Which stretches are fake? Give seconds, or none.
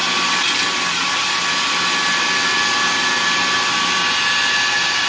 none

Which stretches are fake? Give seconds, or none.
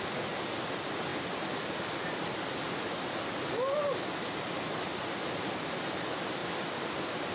6.4-7.3 (vocoder, BigVGAN v2)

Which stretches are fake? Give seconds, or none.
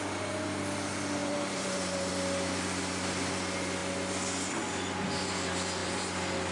1.2-2.1 (vocoder, BigVGAN v2)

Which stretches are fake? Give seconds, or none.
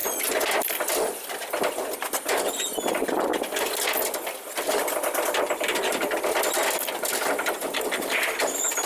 none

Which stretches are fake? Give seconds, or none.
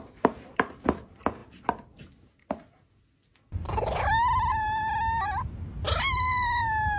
none